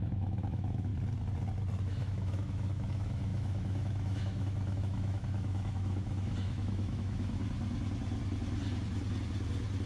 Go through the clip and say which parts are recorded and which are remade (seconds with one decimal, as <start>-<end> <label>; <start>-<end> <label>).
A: 0.0-0.9 remade; 0.9-1.8 recorded; 1.8-7.4 remade; 7.4-9.9 recorded